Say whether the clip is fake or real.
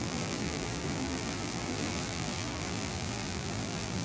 fake